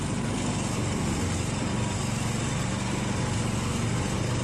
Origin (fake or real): real